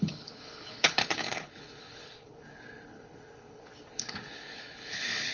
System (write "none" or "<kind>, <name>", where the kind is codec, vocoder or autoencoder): codec, HILCodec